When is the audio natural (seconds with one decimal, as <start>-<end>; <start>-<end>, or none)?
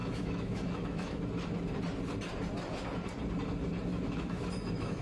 1.2-3.9